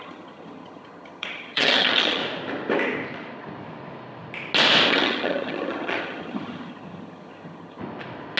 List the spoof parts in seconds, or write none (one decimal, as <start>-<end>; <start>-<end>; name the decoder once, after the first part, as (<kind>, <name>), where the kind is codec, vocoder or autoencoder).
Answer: 0.0-2.2 (vocoder, HiFi-GAN); 4.9-7.8